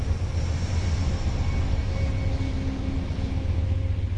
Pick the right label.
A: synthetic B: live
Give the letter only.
B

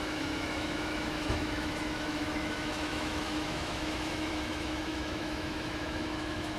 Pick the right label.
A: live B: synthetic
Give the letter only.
B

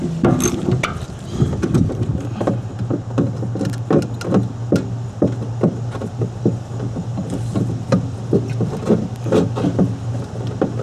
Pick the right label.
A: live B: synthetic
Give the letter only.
A